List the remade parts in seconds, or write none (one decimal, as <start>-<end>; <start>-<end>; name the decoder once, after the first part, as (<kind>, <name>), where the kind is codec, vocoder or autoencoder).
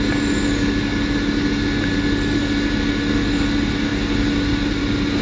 none